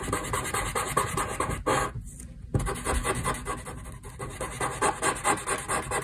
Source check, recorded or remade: recorded